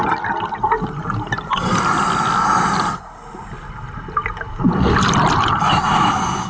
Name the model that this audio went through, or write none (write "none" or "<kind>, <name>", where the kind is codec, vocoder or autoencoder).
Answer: none